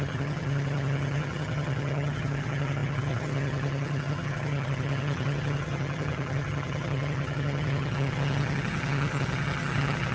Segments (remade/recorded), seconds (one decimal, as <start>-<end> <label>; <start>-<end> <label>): 0.0-10.1 remade